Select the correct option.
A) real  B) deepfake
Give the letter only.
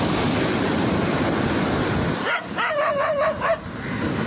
A